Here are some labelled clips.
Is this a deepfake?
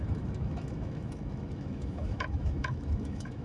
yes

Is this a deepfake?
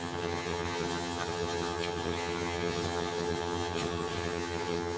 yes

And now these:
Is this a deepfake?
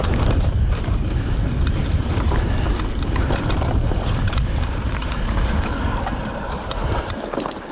yes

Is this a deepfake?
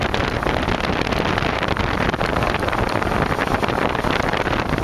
yes